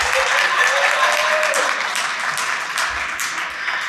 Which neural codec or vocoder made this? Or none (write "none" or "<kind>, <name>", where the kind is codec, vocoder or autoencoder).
none